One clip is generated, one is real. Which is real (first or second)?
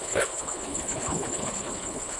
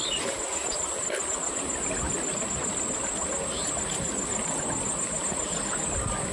second